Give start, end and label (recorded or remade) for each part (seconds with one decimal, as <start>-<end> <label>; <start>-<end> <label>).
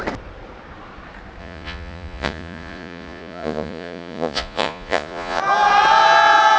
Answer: 0.0-1.4 recorded; 1.4-5.4 remade; 5.4-6.6 recorded